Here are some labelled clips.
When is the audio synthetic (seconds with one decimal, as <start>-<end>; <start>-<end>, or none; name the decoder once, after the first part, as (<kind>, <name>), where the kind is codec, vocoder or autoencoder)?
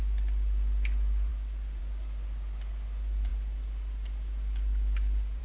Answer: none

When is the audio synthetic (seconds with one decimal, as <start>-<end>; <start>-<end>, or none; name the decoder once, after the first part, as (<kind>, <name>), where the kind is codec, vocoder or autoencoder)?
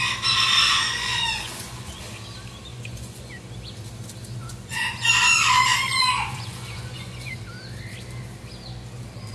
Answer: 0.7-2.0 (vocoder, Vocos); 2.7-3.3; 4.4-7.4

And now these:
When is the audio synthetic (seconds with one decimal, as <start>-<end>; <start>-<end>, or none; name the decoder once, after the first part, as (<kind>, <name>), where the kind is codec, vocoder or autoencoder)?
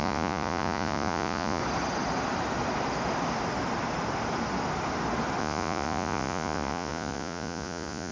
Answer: 0.0-1.6 (vocoder, Vocos); 5.4-8.1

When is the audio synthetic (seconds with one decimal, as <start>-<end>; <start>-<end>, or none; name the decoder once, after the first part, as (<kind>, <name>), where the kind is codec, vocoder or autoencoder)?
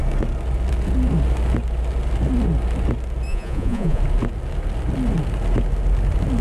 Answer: 3.3-4.0 (vocoder, Vocos)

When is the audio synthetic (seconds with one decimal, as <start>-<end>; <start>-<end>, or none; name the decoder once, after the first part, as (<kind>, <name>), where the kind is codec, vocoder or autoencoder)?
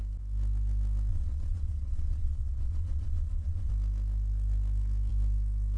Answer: 1.1-3.7 (vocoder, Vocos)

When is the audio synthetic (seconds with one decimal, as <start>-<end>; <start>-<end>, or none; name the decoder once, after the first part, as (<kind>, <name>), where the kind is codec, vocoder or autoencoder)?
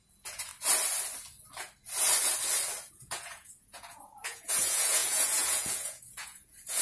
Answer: 0.0-0.5 (vocoder, Vocos); 2.9-6.8